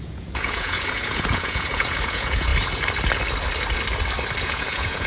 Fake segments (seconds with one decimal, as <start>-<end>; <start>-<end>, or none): 0.0-2.5; 4.4-5.1